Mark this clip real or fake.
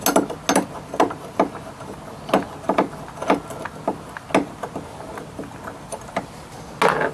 real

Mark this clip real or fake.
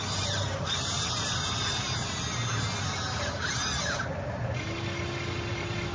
real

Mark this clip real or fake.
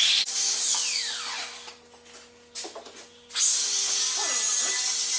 real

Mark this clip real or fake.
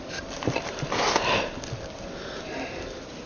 real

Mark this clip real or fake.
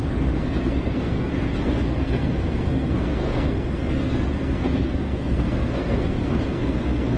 fake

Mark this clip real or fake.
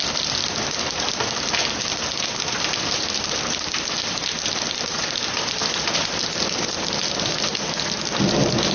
real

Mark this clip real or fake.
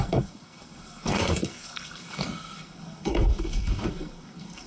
fake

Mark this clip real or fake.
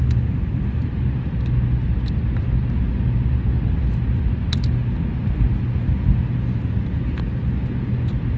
real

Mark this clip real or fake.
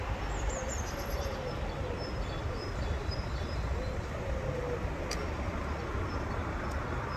real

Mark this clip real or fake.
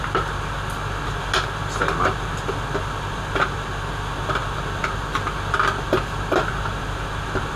real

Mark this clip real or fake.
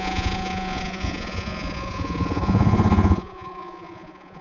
fake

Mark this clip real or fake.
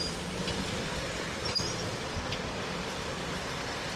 fake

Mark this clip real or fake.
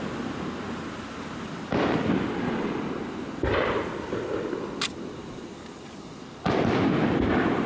real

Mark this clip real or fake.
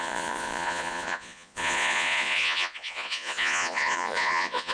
fake